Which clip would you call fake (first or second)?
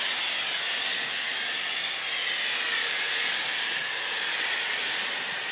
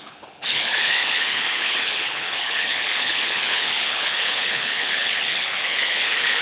second